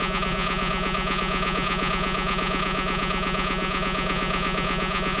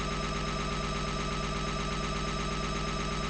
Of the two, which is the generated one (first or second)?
first